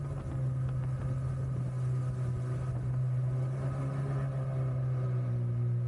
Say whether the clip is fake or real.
real